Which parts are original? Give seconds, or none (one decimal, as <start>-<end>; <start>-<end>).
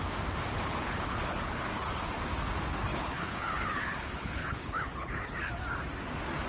0.0-0.5; 2.2-2.9; 5.5-6.5